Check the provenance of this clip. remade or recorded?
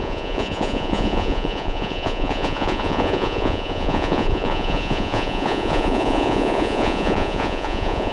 remade